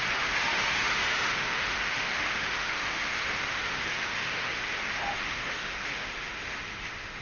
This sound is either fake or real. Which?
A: fake